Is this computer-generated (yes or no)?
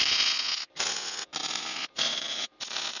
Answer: no